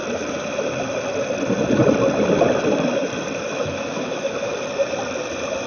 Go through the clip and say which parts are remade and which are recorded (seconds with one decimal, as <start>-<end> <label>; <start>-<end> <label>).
0.0-3.4 recorded; 3.4-4.5 remade; 4.5-5.7 recorded